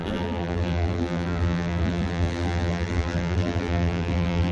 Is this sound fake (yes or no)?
yes